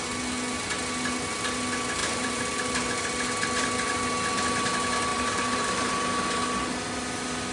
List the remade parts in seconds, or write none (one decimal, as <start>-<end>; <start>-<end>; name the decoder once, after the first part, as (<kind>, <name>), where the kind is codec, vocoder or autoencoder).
2.0-3.3 (vocoder, BigVGAN v2); 5.1-5.9